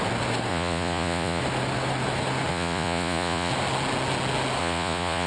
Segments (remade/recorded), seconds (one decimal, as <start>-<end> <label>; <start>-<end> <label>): 0.0-0.5 recorded; 0.5-1.4 remade; 1.4-2.5 recorded; 2.5-3.5 remade; 3.5-4.6 recorded; 4.6-5.3 remade